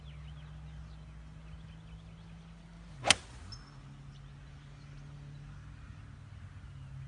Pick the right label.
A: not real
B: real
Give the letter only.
B